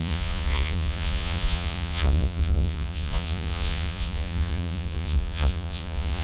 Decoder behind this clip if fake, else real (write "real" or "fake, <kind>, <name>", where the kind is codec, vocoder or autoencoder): fake, vocoder, Vocos